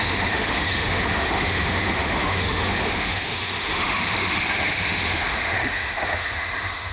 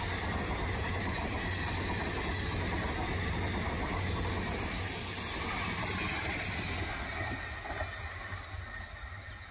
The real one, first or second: second